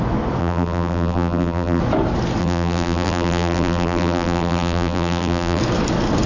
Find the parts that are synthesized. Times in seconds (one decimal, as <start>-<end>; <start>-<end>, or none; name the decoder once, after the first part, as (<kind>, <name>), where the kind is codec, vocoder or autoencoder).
0.4-1.8 (vocoder, BigVGAN v2); 2.4-5.6